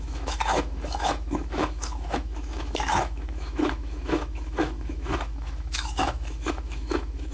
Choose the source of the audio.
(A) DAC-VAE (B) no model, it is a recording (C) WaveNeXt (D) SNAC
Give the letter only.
A